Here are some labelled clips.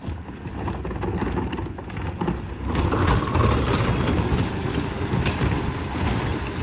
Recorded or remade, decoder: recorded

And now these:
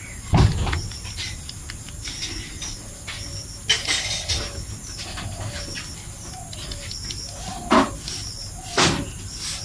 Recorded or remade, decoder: recorded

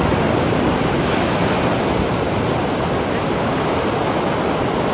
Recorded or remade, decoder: recorded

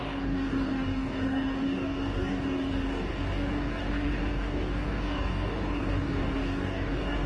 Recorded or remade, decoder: remade, codec, DAC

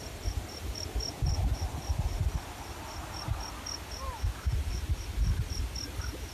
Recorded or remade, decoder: recorded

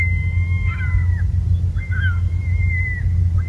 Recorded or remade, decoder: recorded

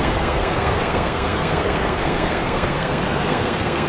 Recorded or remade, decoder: remade, codec, SNAC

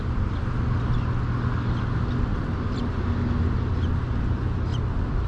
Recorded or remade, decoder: recorded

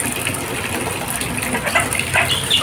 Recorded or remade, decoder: recorded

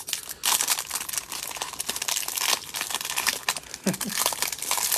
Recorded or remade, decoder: recorded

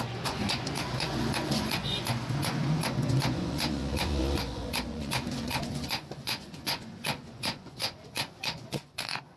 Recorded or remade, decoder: remade, vocoder, Vocos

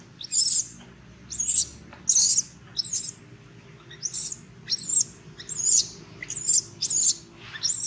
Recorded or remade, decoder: recorded